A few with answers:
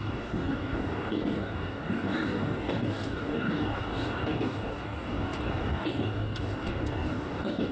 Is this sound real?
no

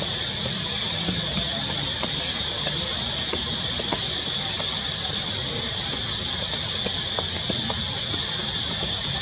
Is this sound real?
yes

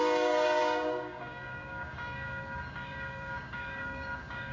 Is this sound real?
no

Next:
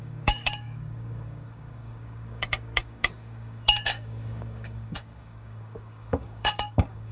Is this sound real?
no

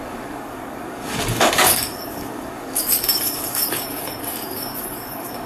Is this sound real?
no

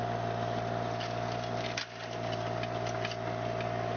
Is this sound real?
yes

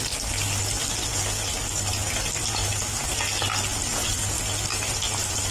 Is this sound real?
yes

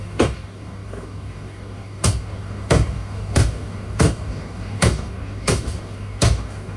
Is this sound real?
no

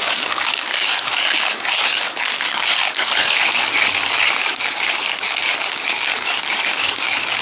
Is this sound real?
no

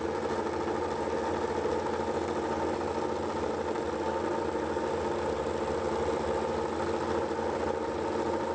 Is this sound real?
yes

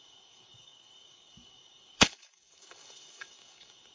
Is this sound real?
no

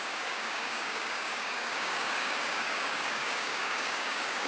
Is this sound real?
no